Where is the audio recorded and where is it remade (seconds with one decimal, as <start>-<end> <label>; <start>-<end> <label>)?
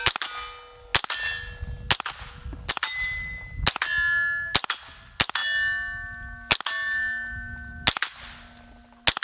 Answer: 0.0-9.2 recorded